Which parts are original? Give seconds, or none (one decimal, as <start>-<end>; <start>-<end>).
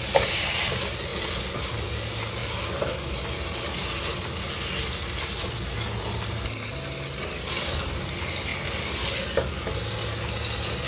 0.0-10.9